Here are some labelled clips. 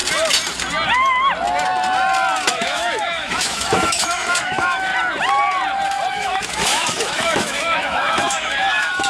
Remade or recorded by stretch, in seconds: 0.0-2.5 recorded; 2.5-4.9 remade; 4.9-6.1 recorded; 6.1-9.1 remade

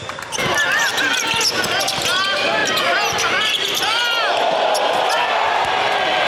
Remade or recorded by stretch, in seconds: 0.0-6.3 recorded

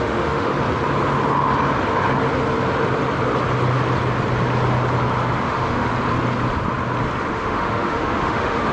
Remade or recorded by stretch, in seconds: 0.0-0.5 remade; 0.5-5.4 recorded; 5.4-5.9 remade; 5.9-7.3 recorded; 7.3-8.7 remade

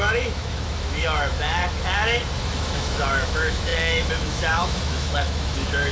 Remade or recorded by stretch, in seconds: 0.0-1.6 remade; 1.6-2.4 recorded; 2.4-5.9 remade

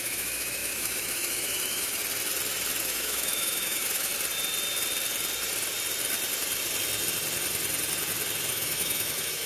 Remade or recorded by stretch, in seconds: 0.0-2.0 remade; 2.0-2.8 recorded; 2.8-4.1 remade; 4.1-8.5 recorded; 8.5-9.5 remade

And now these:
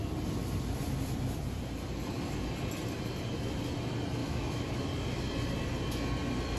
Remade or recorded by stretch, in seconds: 0.0-4.2 recorded; 4.2-4.8 remade; 4.8-6.6 recorded